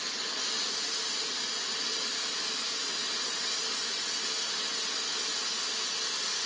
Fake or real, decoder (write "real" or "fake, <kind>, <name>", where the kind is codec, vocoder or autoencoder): real